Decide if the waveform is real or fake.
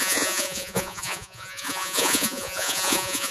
fake